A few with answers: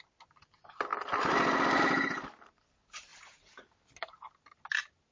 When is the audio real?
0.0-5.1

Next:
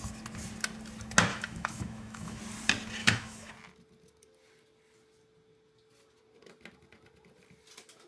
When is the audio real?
0.0-1.3; 2.4-3.0; 3.5-8.1

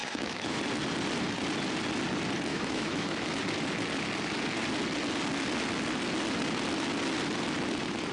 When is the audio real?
0.6-2.5; 3.4-8.1

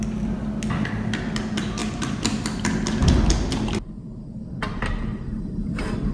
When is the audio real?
0.0-6.1

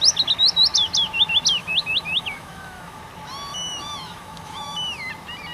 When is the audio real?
0.0-1.6; 3.0-3.5; 5.1-5.5